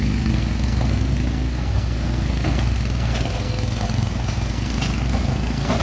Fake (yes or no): yes